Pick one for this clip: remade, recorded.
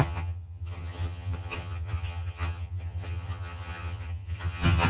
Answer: remade